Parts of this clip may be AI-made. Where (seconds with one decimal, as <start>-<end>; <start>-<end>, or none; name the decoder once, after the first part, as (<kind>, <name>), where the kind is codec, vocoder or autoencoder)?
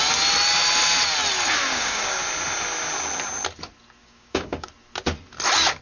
1.7-2.2 (codec, DAC); 4.0-4.7